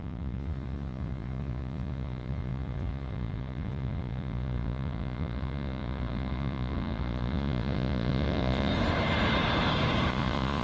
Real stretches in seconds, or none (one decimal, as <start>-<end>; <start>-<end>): 8.7-10.1